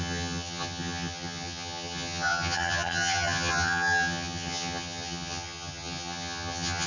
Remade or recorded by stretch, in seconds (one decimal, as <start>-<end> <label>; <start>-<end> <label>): 0.0-6.9 remade